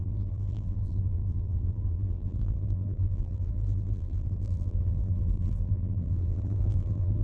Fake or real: fake